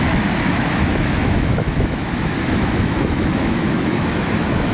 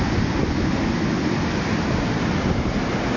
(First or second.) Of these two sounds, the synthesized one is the first